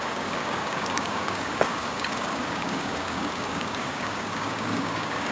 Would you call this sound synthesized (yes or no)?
yes